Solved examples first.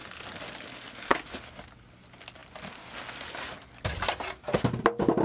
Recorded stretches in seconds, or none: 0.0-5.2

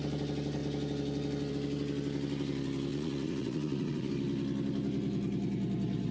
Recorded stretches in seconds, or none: 0.0-2.9; 4.1-6.1

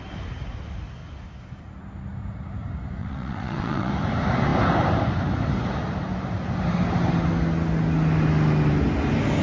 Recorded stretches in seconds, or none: 0.0-3.0; 3.9-9.4

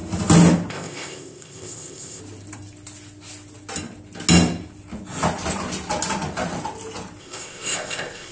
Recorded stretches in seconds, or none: 0.0-0.7; 2.2-7.2

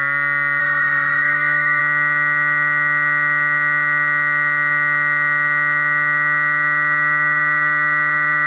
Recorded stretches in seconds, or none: 0.0-0.6; 1.8-8.5

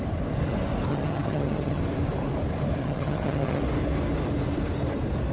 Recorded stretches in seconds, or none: 0.0-0.9; 1.8-2.8; 3.6-5.3

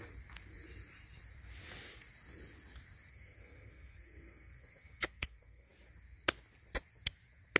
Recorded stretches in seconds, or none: 0.0-3.1; 5.7-7.6

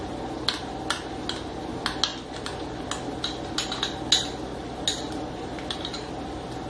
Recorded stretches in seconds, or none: 0.0-6.7